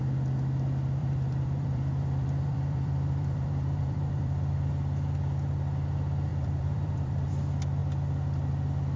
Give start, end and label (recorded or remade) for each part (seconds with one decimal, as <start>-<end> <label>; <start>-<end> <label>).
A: 0.0-1.0 recorded; 1.0-4.7 remade; 4.7-6.3 recorded; 6.3-7.3 remade; 7.3-9.0 recorded